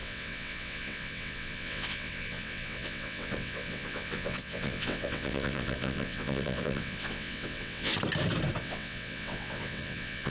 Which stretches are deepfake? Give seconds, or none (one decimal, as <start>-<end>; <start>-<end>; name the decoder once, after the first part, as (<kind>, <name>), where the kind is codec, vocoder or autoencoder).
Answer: 0.0-7.9 (vocoder, WaveNeXt); 8.6-10.3